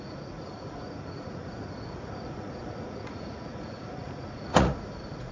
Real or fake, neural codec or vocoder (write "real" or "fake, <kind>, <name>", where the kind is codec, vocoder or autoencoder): fake, vocoder, Vocos